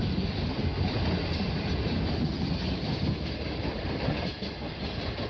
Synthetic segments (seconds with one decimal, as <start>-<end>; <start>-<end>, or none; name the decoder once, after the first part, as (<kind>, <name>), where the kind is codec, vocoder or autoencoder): none

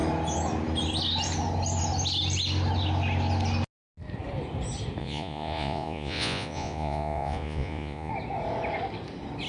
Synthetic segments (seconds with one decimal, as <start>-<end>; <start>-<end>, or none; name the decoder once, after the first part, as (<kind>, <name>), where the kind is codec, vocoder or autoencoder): 5.0-8.1 (vocoder, Vocos)

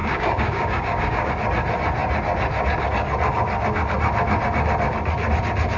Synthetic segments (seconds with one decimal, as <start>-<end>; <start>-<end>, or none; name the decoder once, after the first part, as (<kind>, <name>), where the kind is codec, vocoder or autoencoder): 0.0-1.3 (codec, DAC)

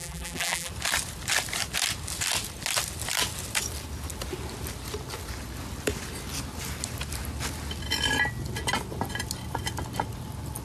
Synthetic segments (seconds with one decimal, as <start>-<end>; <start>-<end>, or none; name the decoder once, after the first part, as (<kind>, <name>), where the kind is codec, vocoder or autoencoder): 0.0-0.7 (vocoder, BigVGAN v2)

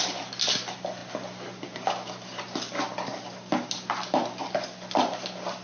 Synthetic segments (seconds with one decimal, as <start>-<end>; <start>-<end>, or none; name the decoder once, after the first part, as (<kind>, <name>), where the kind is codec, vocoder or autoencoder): none

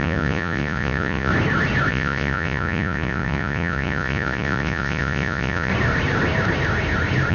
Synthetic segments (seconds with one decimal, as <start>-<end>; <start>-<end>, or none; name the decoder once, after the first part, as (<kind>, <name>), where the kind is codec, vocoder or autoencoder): 0.0-1.3 (vocoder, Vocos); 1.9-5.7

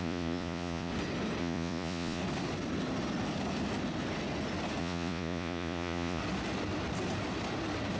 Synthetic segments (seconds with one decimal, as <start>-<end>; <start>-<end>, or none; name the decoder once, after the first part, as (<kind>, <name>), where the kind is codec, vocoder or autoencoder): 0.0-0.9 (vocoder, Vocos); 1.4-2.2; 4.8-6.2

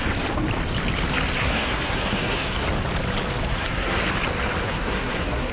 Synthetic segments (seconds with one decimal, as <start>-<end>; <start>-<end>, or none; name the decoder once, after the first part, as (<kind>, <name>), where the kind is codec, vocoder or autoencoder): 1.4-2.5 (codec, SNAC); 3.5-4.0; 4.6-5.5